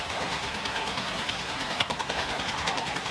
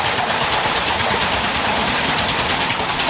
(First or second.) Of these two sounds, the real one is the second